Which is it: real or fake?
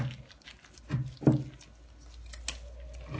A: real